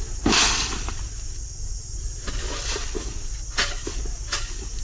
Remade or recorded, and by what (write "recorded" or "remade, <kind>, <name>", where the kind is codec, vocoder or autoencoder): recorded